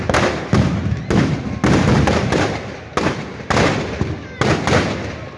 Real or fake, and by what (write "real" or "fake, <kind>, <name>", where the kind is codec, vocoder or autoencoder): real